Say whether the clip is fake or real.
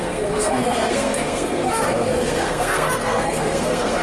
fake